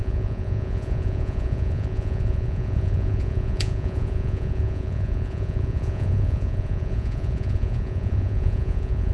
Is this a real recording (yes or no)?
no